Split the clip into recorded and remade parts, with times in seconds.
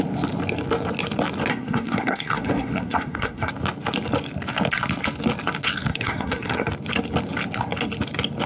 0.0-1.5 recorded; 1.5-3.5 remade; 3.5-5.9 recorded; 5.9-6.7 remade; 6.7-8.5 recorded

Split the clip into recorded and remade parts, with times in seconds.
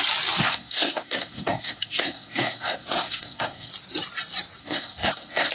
0.0-0.4 recorded; 0.4-3.7 remade; 3.7-4.6 recorded; 4.6-5.5 remade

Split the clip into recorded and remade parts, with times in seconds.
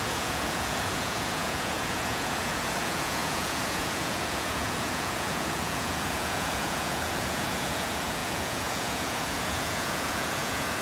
0.0-10.8 remade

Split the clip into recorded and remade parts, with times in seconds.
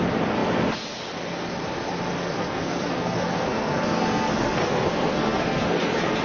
0.0-2.2 recorded; 2.2-6.2 remade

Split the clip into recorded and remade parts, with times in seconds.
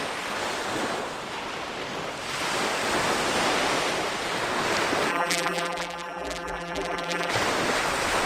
0.0-5.1 recorded; 5.1-7.3 remade; 7.3-8.3 recorded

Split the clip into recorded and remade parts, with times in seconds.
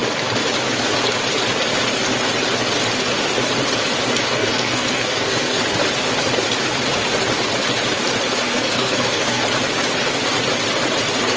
0.0-4.3 recorded; 4.3-5.6 remade; 5.6-8.5 recorded; 8.5-9.4 remade; 9.4-11.4 recorded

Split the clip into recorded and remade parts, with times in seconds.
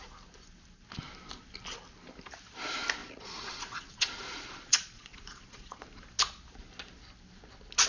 0.0-3.0 recorded; 3.0-5.8 remade; 5.8-7.9 recorded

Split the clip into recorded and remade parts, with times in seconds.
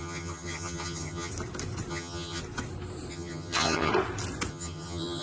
0.0-1.3 remade; 1.3-1.9 recorded; 1.9-2.4 remade; 2.4-3.1 recorded; 3.1-3.9 remade; 3.9-4.5 recorded; 4.5-5.2 remade